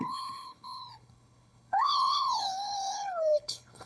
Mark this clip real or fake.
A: fake